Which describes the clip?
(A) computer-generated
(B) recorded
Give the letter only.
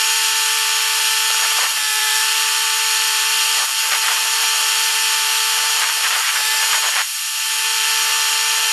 A